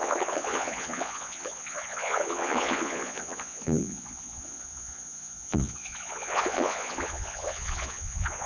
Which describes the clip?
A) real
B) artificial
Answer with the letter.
B